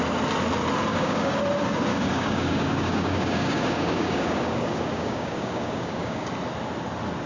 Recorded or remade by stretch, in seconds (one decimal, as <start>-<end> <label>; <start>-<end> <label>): 0.0-0.9 recorded; 0.9-1.4 remade; 1.4-1.9 recorded; 1.9-6.3 remade; 6.3-7.3 recorded